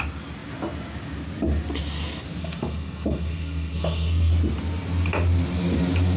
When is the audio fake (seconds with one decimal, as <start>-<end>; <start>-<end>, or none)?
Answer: 2.4-4.3